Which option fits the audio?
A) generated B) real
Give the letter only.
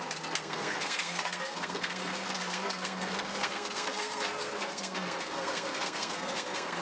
A